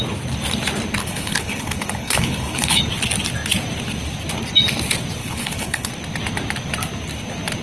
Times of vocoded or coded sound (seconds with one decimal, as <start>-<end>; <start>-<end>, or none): 1.0-2.8; 5.2-5.9